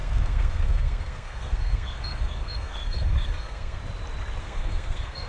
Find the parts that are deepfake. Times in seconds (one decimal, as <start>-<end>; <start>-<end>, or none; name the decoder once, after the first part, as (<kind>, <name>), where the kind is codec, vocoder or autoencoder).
0.0-3.8 (codec, SNAC); 4.4-5.3